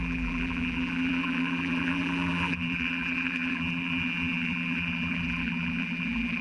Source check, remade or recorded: remade